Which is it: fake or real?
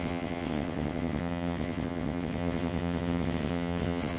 fake